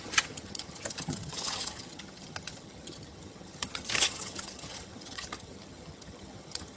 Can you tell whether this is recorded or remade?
remade